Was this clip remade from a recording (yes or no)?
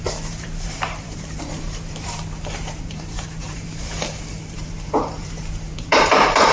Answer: yes